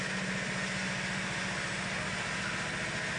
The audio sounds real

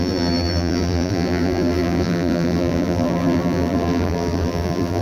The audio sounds fake